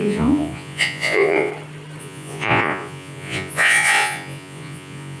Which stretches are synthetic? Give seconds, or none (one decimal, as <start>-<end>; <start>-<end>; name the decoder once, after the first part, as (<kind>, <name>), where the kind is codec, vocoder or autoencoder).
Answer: 0.0-1.5 (vocoder, Vocos); 2.0-5.2